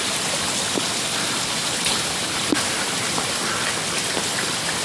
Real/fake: real